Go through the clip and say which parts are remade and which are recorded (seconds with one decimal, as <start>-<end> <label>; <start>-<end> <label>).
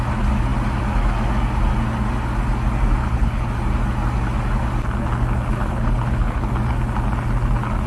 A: 0.0-3.0 recorded; 3.0-3.5 remade; 3.5-5.5 recorded; 5.5-6.5 remade; 6.5-7.9 recorded